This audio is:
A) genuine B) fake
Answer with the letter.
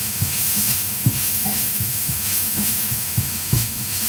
B